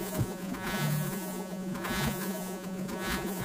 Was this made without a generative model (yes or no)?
no